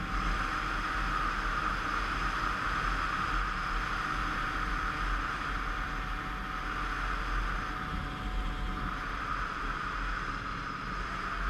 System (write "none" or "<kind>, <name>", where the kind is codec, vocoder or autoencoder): none